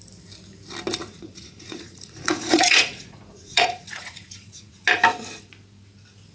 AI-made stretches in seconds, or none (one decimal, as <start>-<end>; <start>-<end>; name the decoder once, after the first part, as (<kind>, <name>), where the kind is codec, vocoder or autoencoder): 1.0-4.8 (vocoder, Vocos)